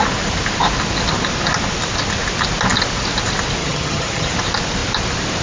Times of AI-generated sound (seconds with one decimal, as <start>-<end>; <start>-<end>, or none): 3.6-4.3